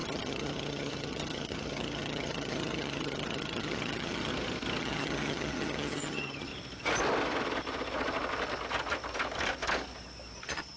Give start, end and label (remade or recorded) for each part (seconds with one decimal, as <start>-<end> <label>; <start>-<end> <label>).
0.0-4.3 remade; 4.3-4.8 recorded; 4.8-6.5 remade; 6.5-10.4 recorded; 10.4-10.8 remade